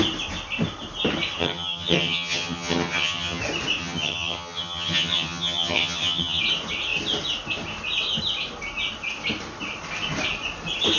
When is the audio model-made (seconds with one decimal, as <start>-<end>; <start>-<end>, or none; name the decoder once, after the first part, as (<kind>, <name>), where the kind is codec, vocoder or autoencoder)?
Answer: 1.4-3.4 (vocoder, HiFi-GAN); 3.8-6.4